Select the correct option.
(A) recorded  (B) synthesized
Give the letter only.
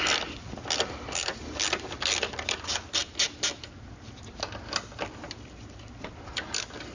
A